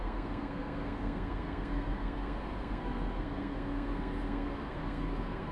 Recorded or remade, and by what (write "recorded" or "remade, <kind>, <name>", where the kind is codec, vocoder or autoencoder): remade, codec, SNAC